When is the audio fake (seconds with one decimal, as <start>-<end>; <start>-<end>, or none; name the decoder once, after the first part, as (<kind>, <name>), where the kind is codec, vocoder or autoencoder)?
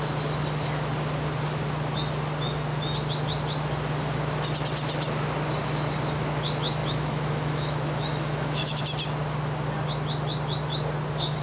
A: 6.8-8.8 (autoencoder, DAC-VAE)